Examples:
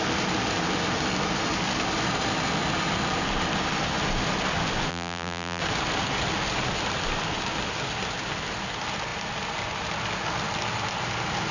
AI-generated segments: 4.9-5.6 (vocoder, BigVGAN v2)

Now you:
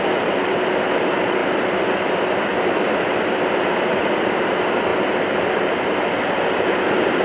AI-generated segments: none

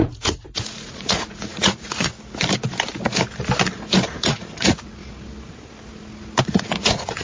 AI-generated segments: 0.0-2.1 (vocoder, Vocos); 4.1-5.0; 6.4-7.2

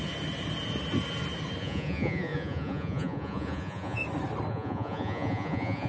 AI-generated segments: 1.6-4.0 (vocoder, Vocos); 4.5-5.9